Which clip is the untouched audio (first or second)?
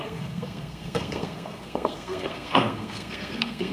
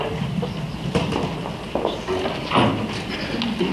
second